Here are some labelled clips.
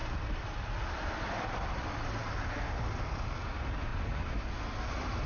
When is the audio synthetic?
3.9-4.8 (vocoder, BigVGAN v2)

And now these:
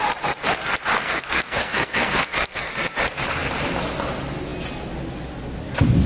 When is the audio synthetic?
1.0-2.7 (codec, SNAC)

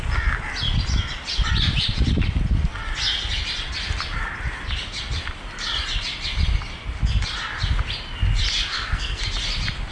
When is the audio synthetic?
8.7-9.2 (codec, SNAC)